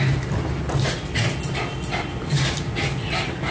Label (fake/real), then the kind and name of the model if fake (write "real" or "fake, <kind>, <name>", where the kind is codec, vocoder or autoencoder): real